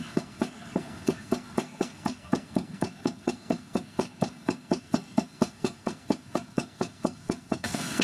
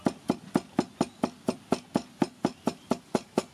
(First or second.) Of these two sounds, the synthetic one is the first